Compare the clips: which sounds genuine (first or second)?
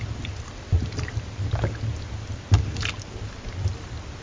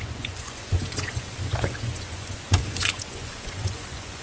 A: first